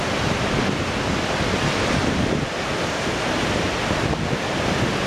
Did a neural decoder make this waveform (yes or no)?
no